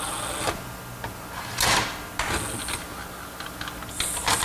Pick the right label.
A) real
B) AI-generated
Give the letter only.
A